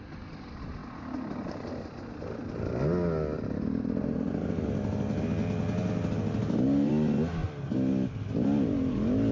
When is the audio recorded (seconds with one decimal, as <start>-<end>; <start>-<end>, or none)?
0.0-6.4; 6.9-9.3